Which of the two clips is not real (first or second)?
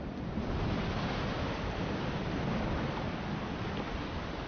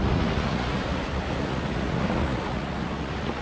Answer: second